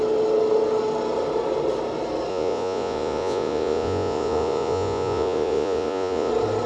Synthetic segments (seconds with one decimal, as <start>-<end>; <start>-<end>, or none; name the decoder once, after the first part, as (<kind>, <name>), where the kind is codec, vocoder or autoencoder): 2.3-6.3 (vocoder, Vocos)